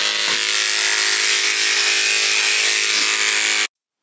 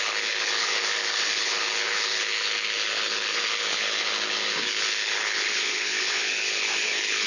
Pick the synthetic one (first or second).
second